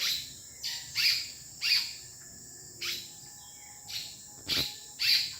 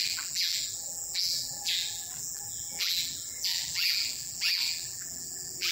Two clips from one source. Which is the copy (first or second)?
second